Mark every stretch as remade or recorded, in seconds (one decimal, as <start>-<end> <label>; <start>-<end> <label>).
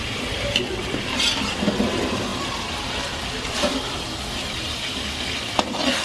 0.0-6.0 recorded